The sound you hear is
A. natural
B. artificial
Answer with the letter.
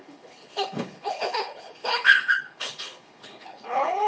B